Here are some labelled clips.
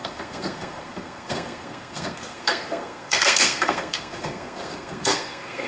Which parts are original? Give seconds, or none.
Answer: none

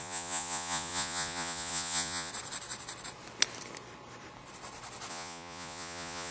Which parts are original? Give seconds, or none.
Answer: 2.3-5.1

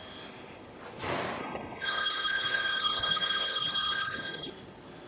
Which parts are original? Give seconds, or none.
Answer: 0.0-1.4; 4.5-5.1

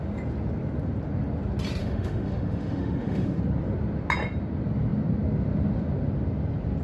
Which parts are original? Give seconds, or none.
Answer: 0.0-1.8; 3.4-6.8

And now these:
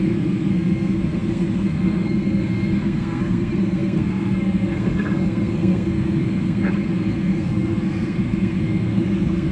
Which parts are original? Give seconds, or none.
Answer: none

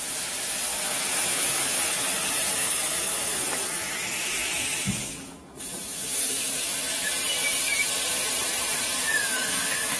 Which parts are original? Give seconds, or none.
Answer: 0.0-0.7; 2.1-2.6; 7.1-9.1

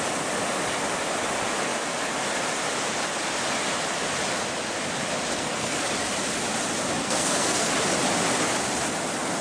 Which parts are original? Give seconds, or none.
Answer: 0.0-5.3; 5.9-7.0; 7.7-9.4